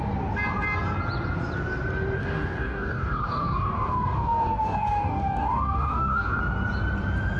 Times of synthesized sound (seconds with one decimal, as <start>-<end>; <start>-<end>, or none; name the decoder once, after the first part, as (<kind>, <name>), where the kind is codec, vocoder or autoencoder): 2.2-6.4 (codec, DAC)